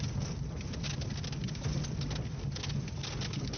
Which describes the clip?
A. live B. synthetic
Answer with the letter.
A